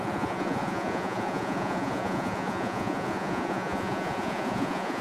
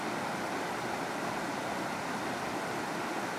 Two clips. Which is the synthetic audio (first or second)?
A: first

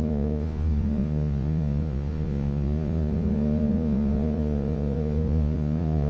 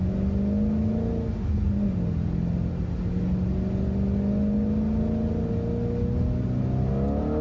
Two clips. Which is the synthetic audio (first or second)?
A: first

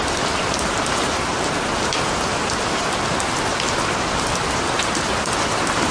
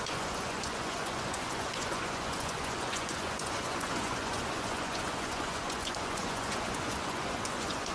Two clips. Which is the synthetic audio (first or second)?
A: second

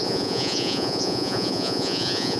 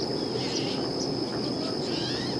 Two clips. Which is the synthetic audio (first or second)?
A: first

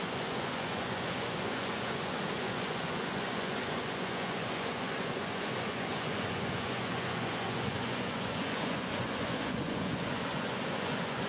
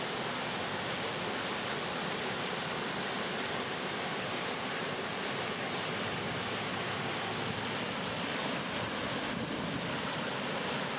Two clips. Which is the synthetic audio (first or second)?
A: first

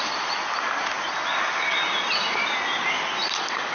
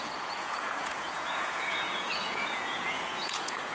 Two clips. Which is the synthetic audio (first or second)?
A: second